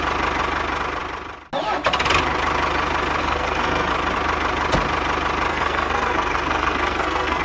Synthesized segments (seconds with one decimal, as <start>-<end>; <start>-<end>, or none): 3.2-3.9; 5.5-7.4